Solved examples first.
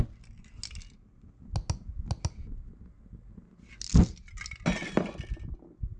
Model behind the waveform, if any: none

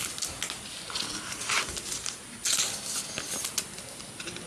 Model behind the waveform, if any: none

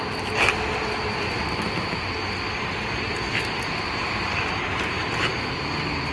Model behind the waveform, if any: none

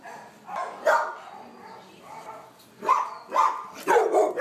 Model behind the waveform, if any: none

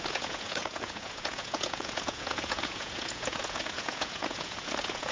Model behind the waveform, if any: vocoder, Vocos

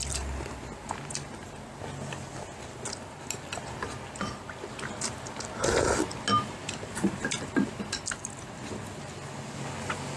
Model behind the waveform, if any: none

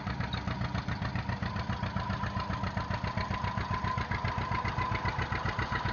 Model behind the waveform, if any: none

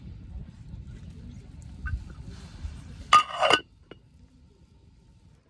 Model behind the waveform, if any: none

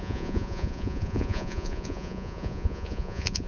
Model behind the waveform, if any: vocoder, Vocos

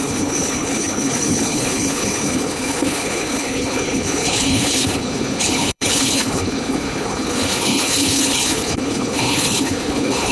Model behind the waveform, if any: codec, HILCodec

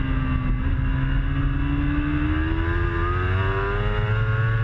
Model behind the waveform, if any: none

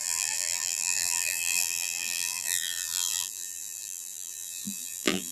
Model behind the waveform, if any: vocoder, BigVGAN v2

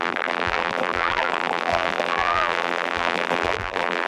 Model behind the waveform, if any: vocoder, BigVGAN v2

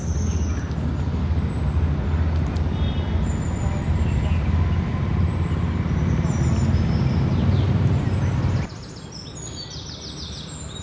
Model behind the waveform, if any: none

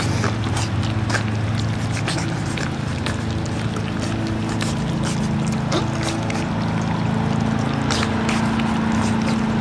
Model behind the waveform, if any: none